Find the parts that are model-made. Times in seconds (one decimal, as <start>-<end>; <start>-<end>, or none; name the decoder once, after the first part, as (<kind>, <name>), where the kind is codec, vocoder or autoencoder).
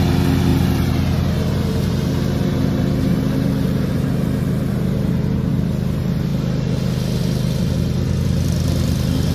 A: 0.5-5.6 (vocoder, BigVGAN v2)